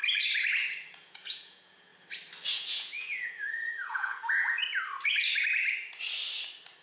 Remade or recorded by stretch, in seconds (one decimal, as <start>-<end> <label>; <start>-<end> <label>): 0.0-1.0 recorded; 1.0-1.9 remade; 1.9-2.5 recorded; 2.5-4.6 remade; 4.6-6.8 recorded